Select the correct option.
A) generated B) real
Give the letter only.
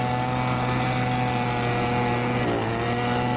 B